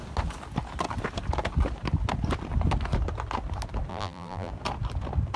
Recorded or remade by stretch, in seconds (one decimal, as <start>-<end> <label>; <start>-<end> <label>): 0.0-3.9 recorded; 3.9-4.5 remade; 4.5-5.4 recorded